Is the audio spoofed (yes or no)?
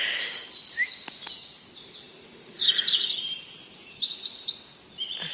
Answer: no